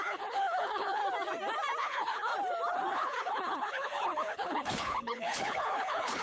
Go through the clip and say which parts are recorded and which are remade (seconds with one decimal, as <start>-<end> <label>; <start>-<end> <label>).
0.0-1.0 remade; 1.0-1.8 recorded; 1.8-2.3 remade; 2.3-2.9 recorded; 2.9-6.2 remade